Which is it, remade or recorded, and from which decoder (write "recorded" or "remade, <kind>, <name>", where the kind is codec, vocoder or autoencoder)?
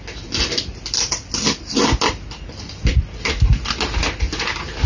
recorded